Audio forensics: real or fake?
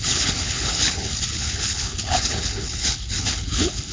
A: fake